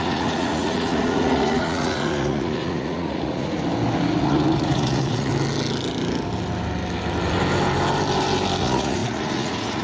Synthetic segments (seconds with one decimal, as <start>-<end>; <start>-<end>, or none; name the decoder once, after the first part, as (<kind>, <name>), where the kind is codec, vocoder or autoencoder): 0.0-3.6 (vocoder, Vocos); 4.2-5.3; 8.6-9.8